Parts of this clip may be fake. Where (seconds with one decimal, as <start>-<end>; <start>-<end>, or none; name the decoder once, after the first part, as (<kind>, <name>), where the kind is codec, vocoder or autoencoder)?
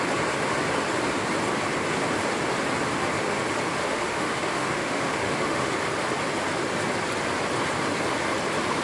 3.8-5.7 (autoencoder, DAC-VAE)